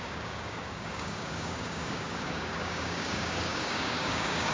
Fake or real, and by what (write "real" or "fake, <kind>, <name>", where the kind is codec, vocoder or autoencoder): fake, codec, DAC